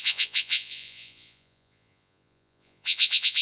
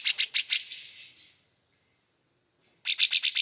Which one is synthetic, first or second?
first